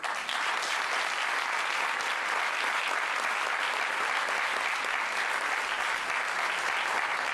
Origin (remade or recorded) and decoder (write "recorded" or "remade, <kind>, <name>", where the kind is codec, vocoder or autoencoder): recorded